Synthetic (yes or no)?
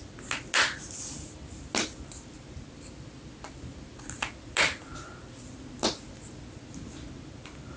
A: no